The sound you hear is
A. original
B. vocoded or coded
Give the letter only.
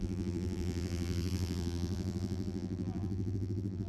B